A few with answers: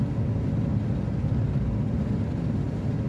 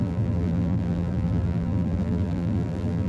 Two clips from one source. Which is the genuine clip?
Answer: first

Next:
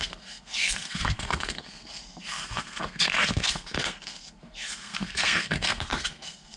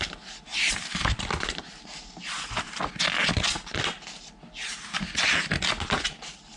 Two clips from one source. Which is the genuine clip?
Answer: second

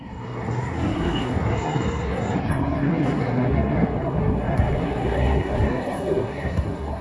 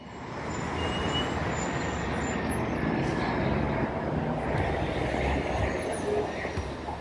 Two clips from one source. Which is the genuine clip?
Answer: second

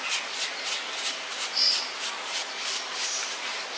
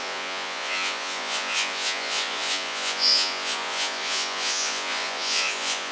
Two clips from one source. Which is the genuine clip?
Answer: first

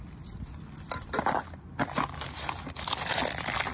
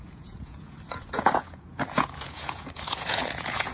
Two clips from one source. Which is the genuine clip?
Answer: first